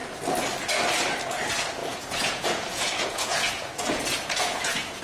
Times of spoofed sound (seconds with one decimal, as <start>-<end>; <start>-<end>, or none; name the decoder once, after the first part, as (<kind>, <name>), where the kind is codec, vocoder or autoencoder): 1.8-5.0 (vocoder, Vocos)